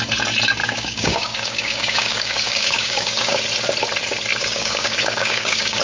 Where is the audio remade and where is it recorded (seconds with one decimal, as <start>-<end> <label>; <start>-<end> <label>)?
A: 0.0-0.6 recorded; 0.6-3.4 remade; 3.4-4.4 recorded; 4.4-5.8 remade